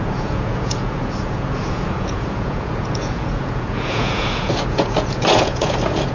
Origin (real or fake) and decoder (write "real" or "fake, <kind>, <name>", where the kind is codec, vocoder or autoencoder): fake, vocoder, Vocos